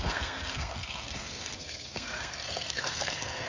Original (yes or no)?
no